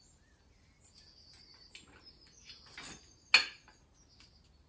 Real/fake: real